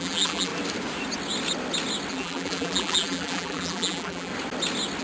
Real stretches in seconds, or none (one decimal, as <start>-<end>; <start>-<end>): 0.5-2.1; 4.3-5.0